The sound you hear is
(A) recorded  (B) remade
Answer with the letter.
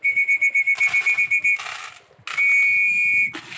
A